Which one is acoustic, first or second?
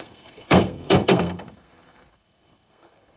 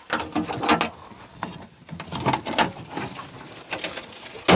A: second